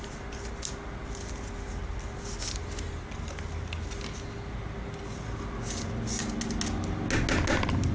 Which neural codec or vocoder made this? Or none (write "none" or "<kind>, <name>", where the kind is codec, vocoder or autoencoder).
none